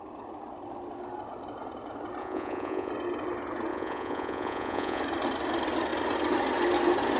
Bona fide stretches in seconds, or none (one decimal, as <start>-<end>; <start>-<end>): 0.0-2.2; 2.9-3.7; 5.0-7.2